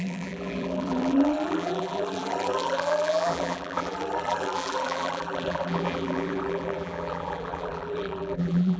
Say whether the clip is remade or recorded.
remade